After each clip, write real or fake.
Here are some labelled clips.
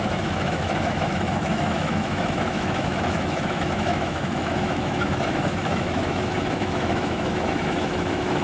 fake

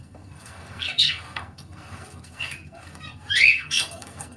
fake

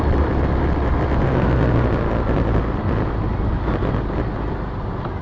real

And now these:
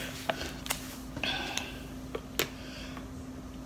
real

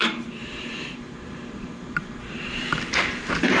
fake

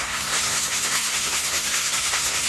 fake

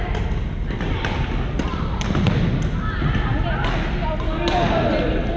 real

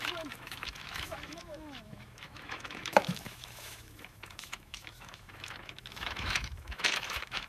fake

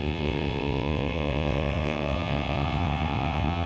fake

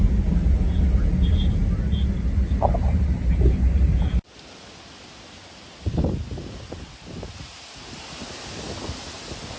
real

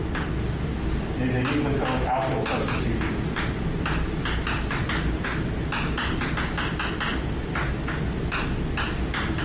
real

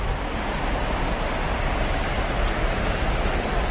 real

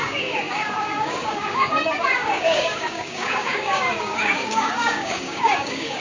fake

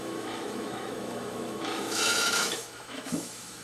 fake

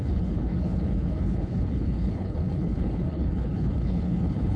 fake